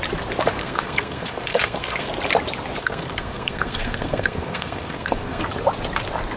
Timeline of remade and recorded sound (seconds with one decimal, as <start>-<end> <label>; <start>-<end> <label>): 0.0-0.6 recorded; 0.6-2.1 remade; 2.1-2.8 recorded; 2.8-5.4 remade; 5.4-6.4 recorded